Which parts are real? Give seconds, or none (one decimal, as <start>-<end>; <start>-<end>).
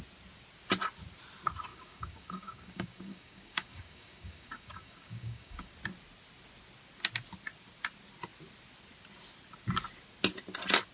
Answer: 0.0-1.7; 5.7-10.9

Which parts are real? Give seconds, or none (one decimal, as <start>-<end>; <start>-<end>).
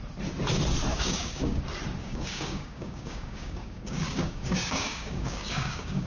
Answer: 0.0-0.9; 1.6-2.0